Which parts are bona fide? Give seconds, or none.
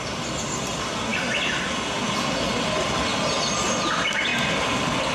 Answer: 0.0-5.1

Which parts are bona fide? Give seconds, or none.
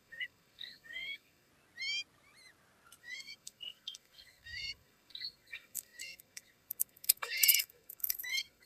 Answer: 1.5-3.0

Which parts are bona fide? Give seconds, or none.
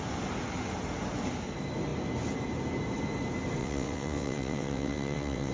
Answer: 0.0-3.6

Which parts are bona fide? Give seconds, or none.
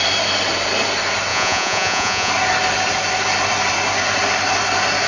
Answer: 0.0-1.3; 2.3-5.1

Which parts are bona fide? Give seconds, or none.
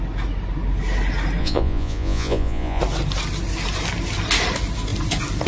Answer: 0.0-1.4; 2.8-5.5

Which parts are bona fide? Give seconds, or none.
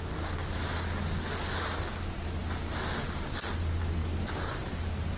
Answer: 0.0-5.2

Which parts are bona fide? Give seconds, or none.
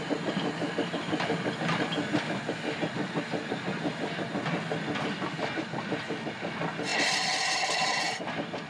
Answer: 0.0-8.7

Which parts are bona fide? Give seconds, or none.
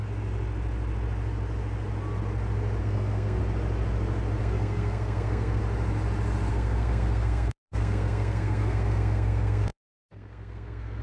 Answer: 0.0-2.8; 3.4-4.4; 5.6-6.5